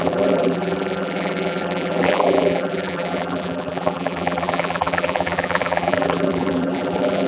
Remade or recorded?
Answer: remade